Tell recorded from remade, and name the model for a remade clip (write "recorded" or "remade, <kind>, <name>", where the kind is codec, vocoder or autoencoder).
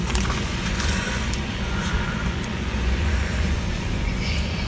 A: remade, vocoder, Vocos